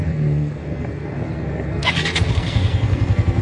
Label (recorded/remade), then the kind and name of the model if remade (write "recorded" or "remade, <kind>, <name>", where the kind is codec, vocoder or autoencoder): remade, codec, SNAC